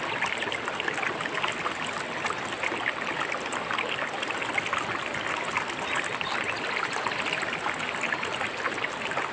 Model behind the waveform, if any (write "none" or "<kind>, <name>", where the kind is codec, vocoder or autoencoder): none